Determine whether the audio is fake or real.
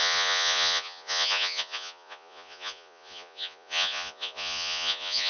fake